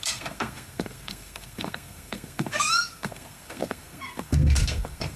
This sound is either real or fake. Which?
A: fake